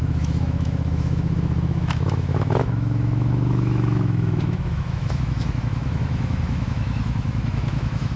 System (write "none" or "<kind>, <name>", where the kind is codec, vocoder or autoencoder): autoencoder, DAC-VAE